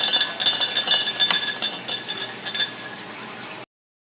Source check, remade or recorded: recorded